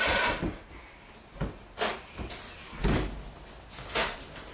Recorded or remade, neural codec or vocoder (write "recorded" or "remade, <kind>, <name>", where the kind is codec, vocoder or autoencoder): recorded